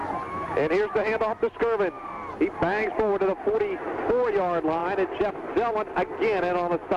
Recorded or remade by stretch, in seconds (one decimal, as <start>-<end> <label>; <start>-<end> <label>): 0.0-7.0 recorded